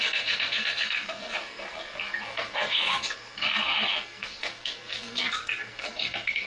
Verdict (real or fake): fake